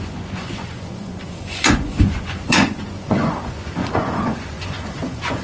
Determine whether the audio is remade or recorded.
remade